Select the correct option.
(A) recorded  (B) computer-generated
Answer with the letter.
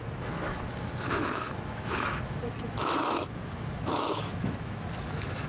B